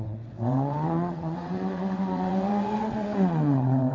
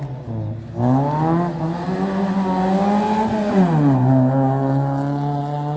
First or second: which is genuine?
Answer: second